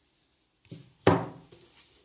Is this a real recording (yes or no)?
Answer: yes